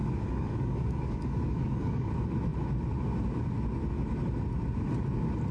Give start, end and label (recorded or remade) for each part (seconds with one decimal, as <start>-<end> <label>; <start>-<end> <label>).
0.0-2.1 remade; 2.1-5.5 recorded